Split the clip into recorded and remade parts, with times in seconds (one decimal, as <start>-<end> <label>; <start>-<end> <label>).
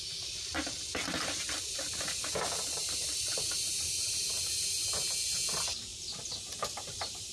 0.0-0.5 recorded; 0.5-4.9 remade; 4.9-7.3 recorded